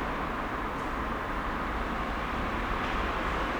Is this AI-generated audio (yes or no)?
yes